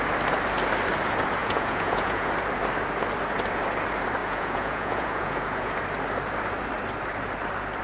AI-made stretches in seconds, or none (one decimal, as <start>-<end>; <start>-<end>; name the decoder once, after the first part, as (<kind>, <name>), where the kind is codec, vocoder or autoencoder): 1.4-2.3 (vocoder, Vocos); 4.2-5.8